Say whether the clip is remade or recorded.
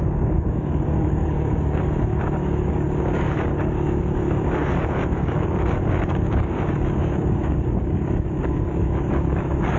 remade